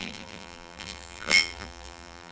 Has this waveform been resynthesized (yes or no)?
yes